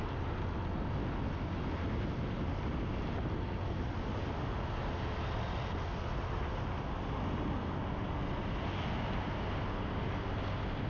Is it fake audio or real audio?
real